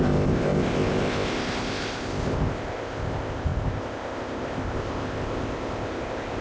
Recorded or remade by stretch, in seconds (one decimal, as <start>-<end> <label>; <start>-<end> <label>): 0.0-6.4 remade